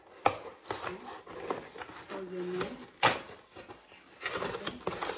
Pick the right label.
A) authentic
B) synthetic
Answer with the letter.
A